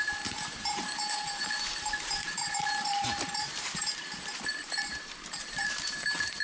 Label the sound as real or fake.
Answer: fake